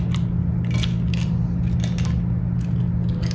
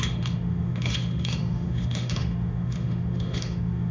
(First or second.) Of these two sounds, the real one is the first